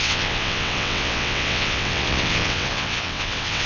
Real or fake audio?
fake